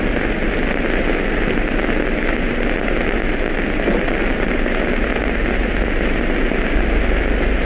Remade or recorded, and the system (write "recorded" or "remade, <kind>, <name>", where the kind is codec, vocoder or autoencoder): recorded